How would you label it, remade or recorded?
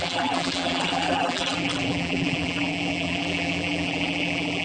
remade